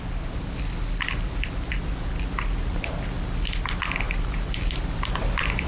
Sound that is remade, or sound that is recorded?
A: recorded